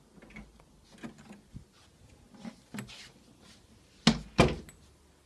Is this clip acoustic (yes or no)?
yes